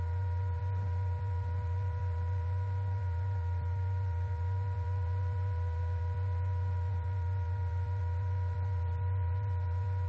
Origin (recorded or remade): remade